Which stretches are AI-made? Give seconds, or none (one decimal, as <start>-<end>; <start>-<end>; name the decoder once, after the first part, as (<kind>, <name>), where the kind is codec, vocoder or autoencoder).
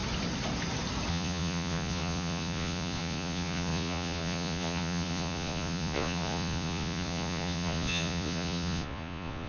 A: 1.1-9.5 (vocoder, Vocos)